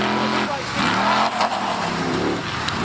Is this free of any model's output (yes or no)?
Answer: yes